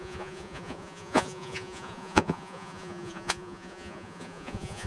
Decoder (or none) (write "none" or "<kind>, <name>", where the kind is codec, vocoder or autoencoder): vocoder, Vocos